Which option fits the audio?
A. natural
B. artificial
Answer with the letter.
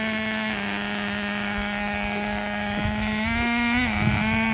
A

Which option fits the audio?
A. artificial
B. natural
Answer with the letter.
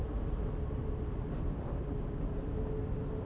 B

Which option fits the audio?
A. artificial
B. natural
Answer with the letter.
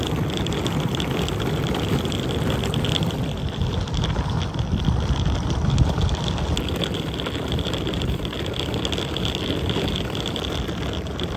B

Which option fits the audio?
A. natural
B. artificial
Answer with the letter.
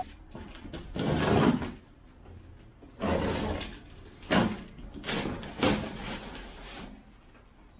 A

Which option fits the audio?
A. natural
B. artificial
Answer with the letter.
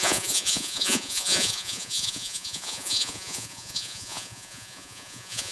B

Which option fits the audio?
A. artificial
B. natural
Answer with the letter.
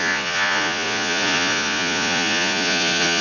A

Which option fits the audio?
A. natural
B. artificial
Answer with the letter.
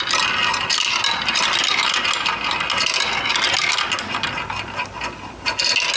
A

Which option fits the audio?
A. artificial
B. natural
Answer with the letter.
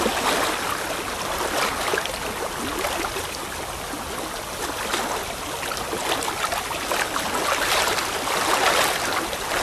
B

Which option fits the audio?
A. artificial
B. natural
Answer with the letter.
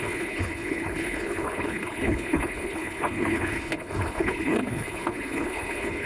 A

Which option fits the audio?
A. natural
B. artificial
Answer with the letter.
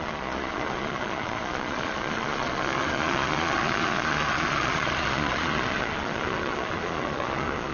B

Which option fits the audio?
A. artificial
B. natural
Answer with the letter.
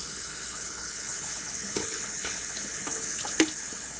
A